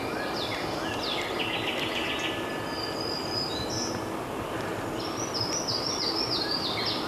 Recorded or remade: recorded